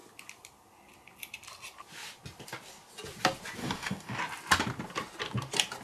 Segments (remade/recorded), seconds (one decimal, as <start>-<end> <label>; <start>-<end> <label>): 0.0-3.6 recorded; 3.6-4.2 remade; 4.2-5.8 recorded